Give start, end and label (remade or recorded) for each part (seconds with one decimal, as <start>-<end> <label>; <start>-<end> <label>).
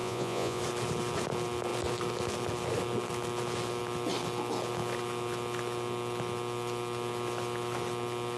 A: 0.0-0.6 remade; 0.6-8.4 recorded